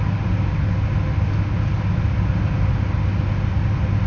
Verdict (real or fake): real